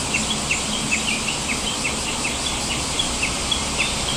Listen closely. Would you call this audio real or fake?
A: real